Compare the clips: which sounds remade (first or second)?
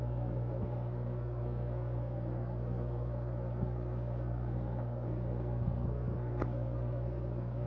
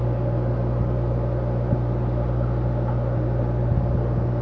first